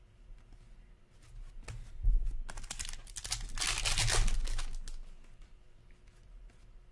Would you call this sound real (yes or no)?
yes